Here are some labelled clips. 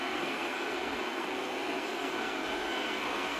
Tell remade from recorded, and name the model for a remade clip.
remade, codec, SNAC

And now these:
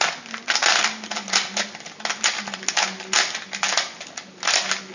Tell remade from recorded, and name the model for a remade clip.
recorded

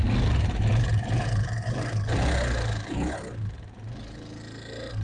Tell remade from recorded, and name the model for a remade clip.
recorded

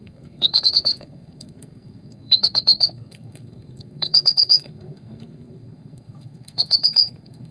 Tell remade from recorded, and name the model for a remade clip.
remade, codec, SNAC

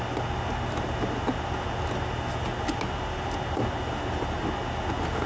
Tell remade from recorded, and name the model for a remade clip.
recorded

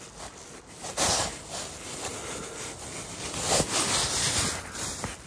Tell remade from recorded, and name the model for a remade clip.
recorded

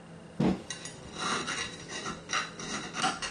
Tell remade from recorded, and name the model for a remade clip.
recorded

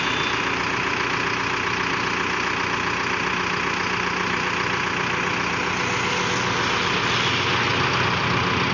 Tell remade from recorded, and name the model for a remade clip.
recorded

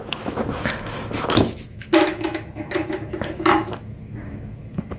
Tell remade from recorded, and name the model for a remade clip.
remade, autoencoder, DAC-VAE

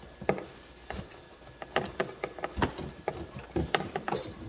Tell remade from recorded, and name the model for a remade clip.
recorded